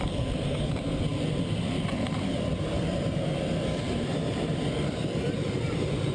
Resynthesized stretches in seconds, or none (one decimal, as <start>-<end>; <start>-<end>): 0.0-6.1